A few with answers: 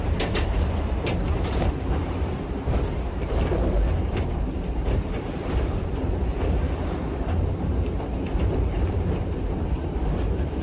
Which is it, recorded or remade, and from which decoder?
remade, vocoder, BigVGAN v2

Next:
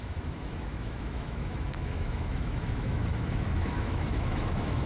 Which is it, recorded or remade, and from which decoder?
remade, autoencoder, DAC-VAE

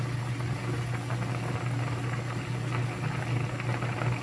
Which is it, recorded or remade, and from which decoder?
recorded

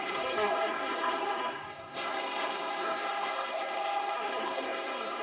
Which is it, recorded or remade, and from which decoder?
remade, codec, SNAC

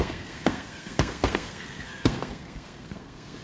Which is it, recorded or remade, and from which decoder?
remade, codec, SNAC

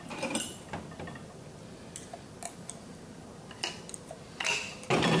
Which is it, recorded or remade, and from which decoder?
recorded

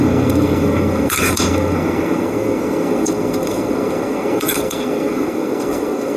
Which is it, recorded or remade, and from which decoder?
remade, codec, SNAC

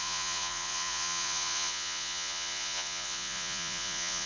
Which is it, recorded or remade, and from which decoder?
remade, vocoder, Vocos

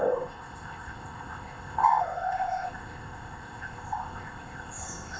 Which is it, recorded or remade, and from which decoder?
remade, codec, ZipCodec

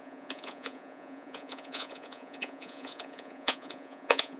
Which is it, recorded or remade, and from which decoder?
remade, vocoder, Vocos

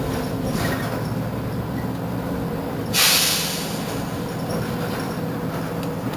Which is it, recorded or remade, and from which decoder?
recorded